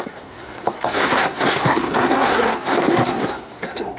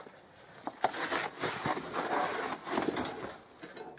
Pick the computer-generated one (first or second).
first